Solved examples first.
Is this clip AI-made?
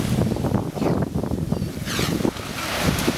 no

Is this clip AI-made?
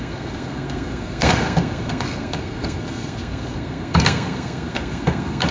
yes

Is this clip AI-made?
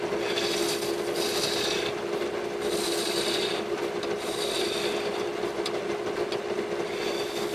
no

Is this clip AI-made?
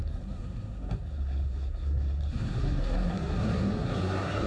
yes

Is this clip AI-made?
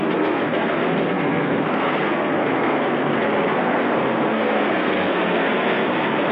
yes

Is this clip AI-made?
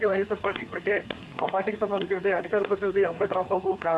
yes